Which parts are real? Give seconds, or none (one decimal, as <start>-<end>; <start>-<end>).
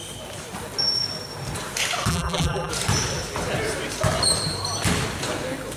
0.0-2.1; 2.7-5.8